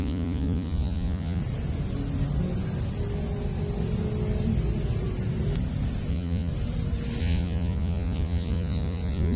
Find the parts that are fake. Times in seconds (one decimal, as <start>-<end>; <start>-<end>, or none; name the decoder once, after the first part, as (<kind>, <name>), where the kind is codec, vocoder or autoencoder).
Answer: 0.0-1.4 (vocoder, Vocos); 6.1-6.5; 7.2-9.4